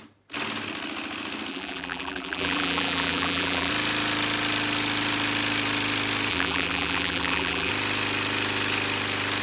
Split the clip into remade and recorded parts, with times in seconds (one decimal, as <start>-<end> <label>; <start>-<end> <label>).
0.0-1.5 recorded; 1.5-3.7 remade; 3.7-6.3 recorded; 6.3-7.7 remade; 7.7-9.4 recorded